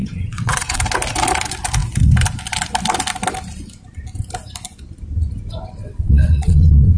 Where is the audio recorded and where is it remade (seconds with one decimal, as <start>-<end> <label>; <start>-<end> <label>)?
0.0-0.8 remade; 0.8-5.8 recorded; 5.8-7.0 remade